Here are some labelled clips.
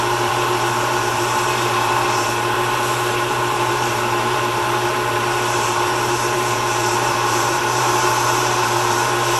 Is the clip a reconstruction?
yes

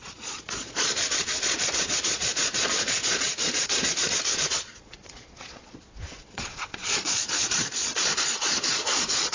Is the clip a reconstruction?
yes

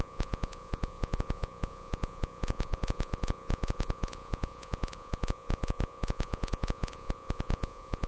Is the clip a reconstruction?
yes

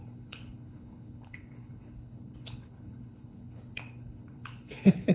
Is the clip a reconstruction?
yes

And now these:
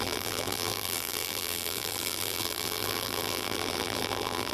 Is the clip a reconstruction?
yes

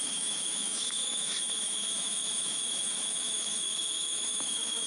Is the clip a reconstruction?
yes